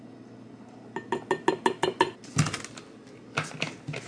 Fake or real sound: real